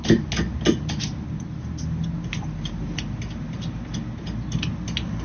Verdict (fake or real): real